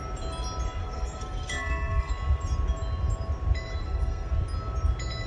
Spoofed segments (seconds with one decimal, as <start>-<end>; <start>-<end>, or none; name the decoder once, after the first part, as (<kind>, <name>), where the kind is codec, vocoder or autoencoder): 0.8-2.1 (codec, SNAC); 3.8-4.3